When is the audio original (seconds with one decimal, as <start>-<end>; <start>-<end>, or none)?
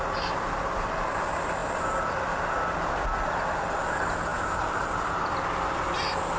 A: 0.0-4.3; 4.9-6.4